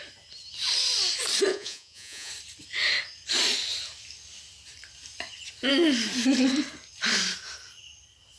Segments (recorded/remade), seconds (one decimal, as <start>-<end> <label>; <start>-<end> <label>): 0.0-1.5 recorded; 1.5-2.3 remade; 2.3-8.4 recorded